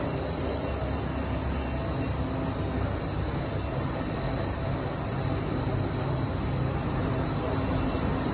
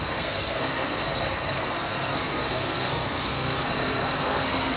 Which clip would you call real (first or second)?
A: first